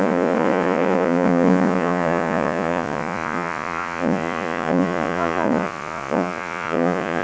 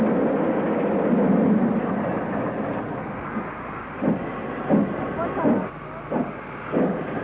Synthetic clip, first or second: first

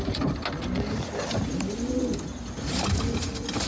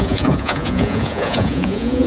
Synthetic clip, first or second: second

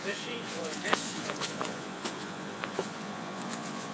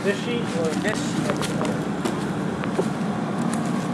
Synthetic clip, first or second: first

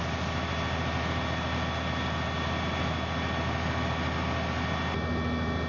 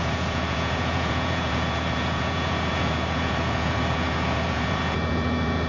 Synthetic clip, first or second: second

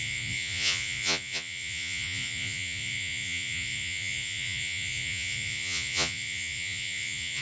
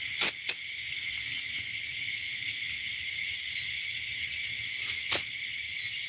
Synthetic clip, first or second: first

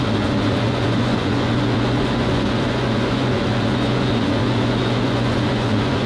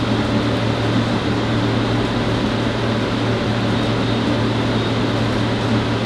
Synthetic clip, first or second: first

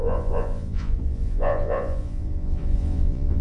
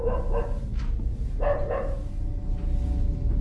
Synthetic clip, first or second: first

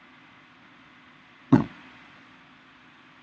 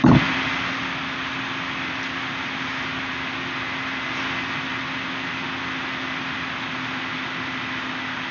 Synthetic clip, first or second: first